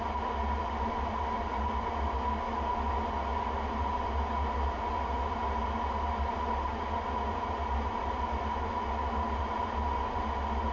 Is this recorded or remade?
recorded